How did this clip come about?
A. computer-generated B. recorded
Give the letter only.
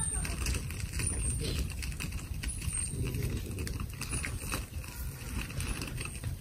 B